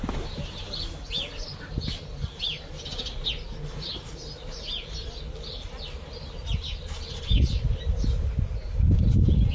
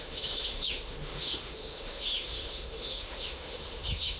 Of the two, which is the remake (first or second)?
second